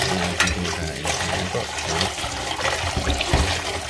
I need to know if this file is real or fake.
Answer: real